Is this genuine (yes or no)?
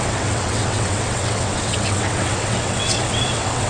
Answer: no